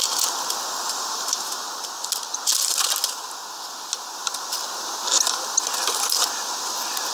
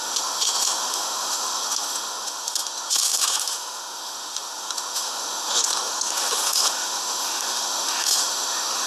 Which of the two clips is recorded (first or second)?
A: first